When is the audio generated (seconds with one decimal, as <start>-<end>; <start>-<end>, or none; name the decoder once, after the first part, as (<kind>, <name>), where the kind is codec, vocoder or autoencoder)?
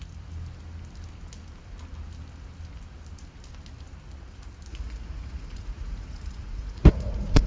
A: 4.7-7.5 (vocoder, Vocos)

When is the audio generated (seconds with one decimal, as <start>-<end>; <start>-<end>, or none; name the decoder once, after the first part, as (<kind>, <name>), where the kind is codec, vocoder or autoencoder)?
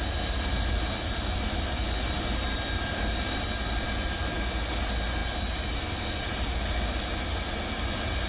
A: none